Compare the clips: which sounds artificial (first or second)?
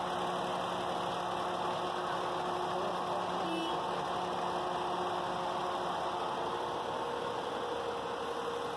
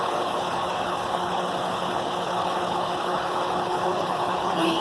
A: second